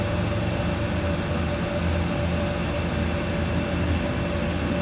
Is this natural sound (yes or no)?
yes